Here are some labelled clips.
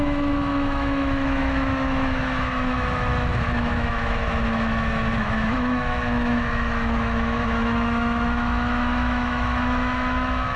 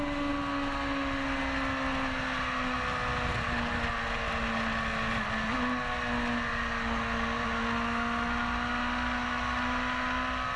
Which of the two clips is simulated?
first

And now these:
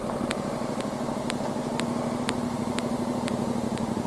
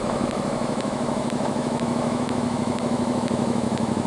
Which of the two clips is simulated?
second